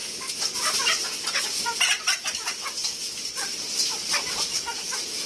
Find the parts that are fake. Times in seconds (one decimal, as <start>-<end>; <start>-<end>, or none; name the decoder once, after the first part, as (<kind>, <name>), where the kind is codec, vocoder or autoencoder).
4.5-5.3 (autoencoder, DAC-VAE)